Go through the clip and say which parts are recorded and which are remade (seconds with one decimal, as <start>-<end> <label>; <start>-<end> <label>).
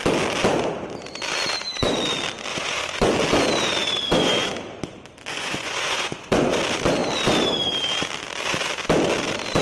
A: 0.0-2.5 recorded; 2.5-3.1 remade; 3.1-3.8 recorded; 3.8-4.5 remade; 4.5-5.3 recorded; 5.3-6.6 remade; 6.6-9.6 recorded